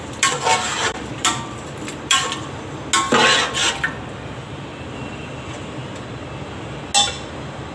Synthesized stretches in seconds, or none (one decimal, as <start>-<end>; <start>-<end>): 0.5-2.3